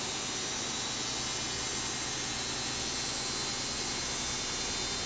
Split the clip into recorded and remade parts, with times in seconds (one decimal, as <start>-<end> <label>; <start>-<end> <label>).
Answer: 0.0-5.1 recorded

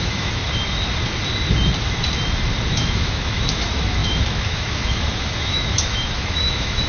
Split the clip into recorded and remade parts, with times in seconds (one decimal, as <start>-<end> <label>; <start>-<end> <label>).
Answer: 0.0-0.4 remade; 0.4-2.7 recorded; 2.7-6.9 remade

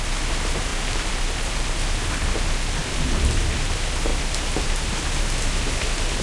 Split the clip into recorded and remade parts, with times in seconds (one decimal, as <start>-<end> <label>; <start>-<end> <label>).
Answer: 0.0-0.7 recorded; 0.7-1.3 remade; 1.3-2.8 recorded; 2.8-3.4 remade; 3.4-6.2 recorded

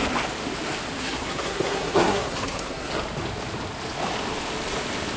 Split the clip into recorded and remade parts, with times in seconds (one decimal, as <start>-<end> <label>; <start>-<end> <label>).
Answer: 0.0-1.0 recorded; 1.0-2.9 remade; 2.9-5.2 recorded

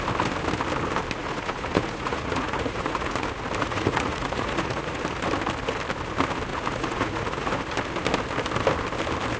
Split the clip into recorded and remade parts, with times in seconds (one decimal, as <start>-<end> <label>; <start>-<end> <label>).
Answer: 0.0-1.2 recorded; 1.2-3.1 remade; 3.1-3.6 recorded; 3.6-5.0 remade; 5.0-6.5 recorded; 6.5-7.5 remade; 7.5-9.4 recorded